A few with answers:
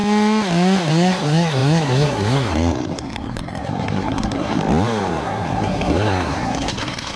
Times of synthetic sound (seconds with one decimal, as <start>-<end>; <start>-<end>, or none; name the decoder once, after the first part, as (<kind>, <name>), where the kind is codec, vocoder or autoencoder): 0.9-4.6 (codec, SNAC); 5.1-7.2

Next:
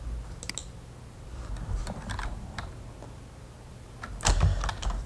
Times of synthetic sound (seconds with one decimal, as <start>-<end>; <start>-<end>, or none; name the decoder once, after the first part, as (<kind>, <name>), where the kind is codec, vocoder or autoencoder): none

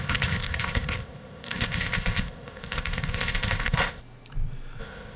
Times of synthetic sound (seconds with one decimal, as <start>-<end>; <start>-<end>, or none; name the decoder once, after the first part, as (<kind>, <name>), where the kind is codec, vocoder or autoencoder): 0.0-4.0 (codec, ZipCodec); 4.8-5.2